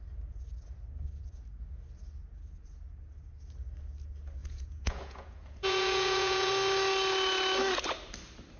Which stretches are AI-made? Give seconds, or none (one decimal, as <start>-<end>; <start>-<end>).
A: 4.4-6.5